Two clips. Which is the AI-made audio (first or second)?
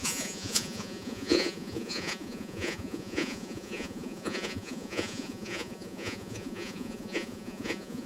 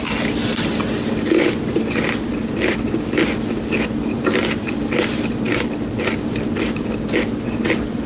first